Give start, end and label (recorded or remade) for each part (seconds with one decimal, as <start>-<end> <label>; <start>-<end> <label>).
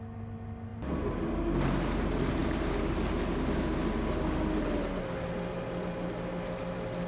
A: 0.0-7.1 recorded